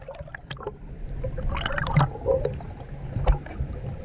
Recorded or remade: recorded